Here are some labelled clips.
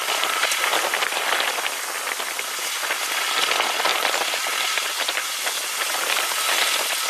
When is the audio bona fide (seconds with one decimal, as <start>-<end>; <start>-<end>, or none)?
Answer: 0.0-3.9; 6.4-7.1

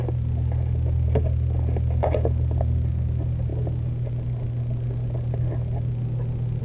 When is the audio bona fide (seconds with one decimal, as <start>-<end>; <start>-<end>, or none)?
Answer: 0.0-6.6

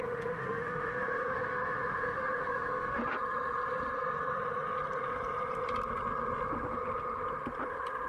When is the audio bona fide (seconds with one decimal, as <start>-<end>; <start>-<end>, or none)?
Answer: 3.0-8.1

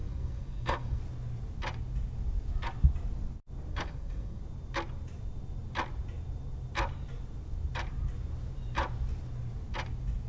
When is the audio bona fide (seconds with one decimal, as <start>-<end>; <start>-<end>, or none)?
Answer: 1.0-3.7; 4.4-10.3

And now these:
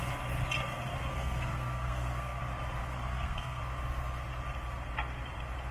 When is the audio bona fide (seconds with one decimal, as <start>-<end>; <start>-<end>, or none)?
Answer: 0.0-1.1; 2.4-2.8; 3.6-5.7

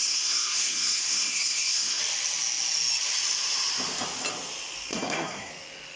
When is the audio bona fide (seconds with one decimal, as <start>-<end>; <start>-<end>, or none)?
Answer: 2.0-4.9; 5.5-6.0